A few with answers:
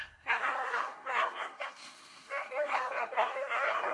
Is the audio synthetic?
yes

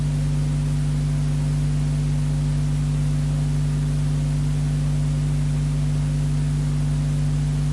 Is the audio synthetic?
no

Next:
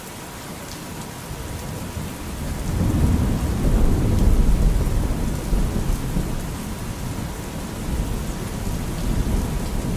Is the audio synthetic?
no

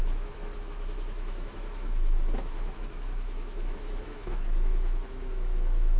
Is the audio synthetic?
yes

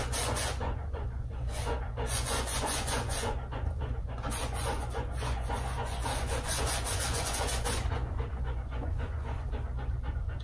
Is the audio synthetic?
yes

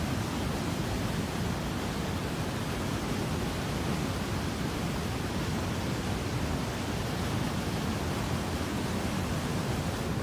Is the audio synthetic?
no